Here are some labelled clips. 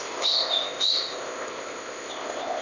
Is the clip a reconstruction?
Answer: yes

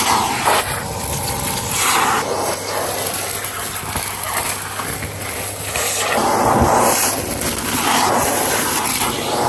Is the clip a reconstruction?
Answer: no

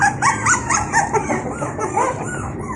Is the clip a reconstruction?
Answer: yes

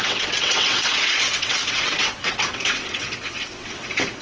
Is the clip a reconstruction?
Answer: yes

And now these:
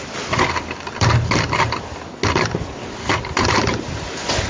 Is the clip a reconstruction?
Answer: no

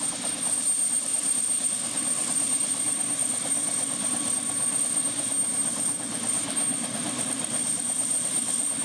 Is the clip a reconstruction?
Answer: no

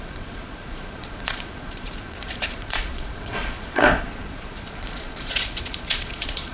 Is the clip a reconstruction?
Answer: yes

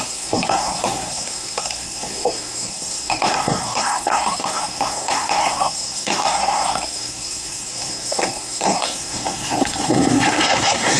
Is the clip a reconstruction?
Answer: yes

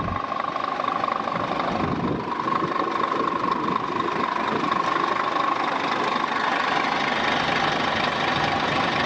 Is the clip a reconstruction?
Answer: no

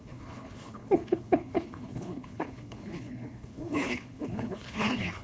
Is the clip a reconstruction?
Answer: yes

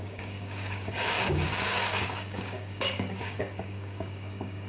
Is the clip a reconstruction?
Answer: yes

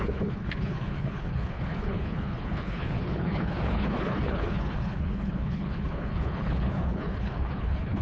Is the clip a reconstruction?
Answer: yes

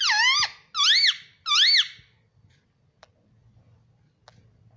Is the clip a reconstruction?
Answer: no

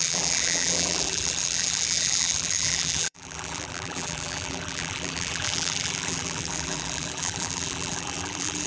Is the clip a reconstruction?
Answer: yes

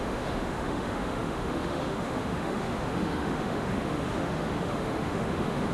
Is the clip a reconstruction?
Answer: yes